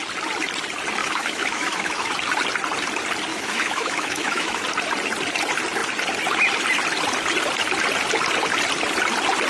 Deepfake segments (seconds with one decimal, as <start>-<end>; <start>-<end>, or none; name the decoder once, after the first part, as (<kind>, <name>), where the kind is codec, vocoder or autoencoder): 1.0-2.1 (autoencoder, DAC-VAE); 3.3-4.6